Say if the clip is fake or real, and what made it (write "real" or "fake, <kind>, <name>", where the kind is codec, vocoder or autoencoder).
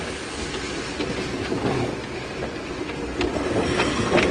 real